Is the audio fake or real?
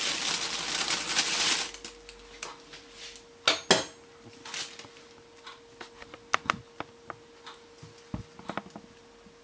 real